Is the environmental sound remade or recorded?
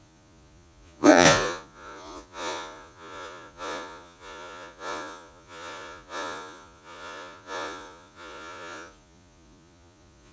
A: remade